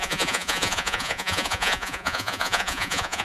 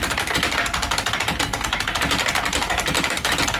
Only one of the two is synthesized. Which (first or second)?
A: first